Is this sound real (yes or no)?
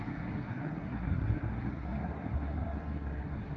no